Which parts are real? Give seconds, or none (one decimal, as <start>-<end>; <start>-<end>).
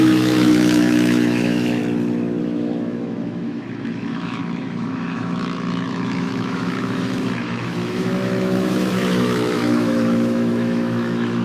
1.8-2.4